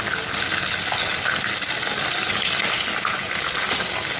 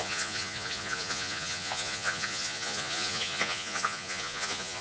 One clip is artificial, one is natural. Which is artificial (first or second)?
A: second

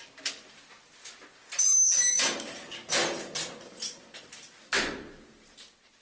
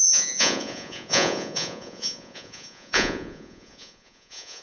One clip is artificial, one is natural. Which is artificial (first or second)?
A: second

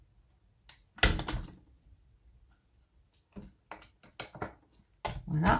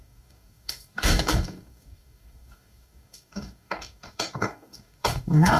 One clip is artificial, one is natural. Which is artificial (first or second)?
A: second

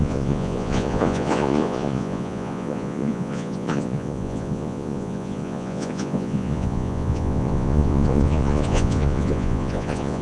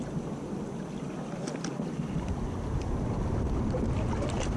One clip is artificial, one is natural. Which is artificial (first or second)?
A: first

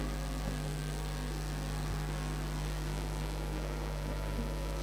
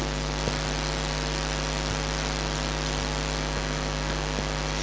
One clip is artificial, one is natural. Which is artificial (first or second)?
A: first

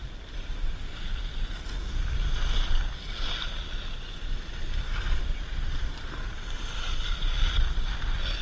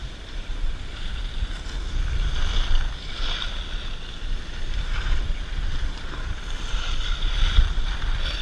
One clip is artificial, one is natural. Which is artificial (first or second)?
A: second